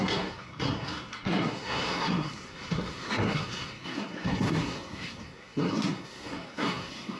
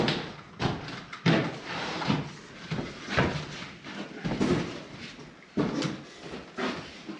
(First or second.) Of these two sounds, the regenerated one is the first